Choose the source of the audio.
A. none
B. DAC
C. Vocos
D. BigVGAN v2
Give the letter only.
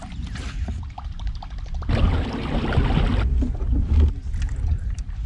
A